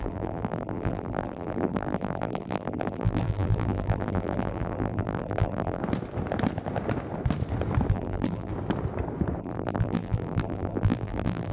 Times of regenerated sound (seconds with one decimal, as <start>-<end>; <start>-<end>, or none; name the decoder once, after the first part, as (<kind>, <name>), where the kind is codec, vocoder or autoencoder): 0.0-5.8 (vocoder, BigVGAN v2); 7.9-8.5; 9.4-11.5